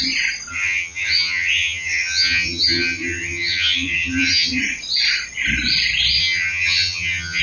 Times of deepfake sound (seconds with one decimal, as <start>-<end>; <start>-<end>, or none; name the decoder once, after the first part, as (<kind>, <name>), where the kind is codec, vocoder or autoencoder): 0.5-4.6 (vocoder, HiFi-GAN); 6.2-7.4